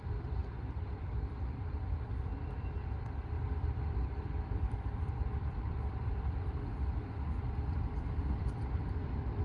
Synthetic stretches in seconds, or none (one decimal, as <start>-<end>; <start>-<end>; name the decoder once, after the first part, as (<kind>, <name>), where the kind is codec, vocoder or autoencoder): 0.0-0.4 (vocoder, BigVGAN v2); 1.0-9.4